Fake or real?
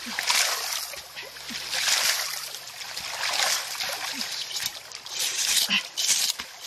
real